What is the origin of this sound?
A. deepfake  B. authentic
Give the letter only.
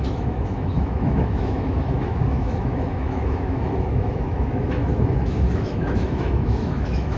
A